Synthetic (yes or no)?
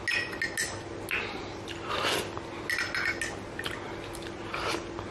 no